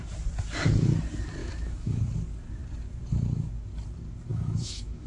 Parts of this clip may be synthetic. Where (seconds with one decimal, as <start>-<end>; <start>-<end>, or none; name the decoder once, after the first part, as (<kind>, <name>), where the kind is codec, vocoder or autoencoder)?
1.4-2.0 (autoencoder, DAC-VAE); 4.3-5.1